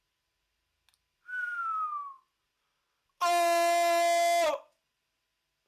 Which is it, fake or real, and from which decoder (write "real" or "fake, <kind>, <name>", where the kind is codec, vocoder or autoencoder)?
real